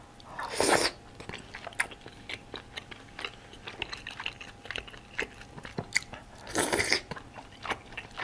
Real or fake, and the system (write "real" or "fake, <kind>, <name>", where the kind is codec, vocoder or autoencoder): real